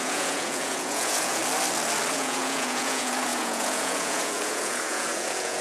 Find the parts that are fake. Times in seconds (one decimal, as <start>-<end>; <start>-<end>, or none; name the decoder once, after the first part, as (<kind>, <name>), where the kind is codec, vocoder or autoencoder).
0.0-1.4 (vocoder, Vocos); 2.1-5.6